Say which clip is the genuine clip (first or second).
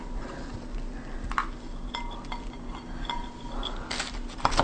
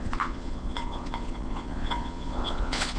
first